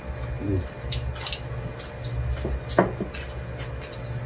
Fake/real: real